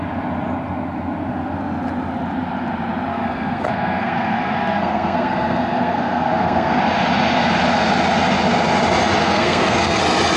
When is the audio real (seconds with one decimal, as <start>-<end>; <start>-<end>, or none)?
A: 0.0-3.1; 6.8-9.2; 10.0-10.4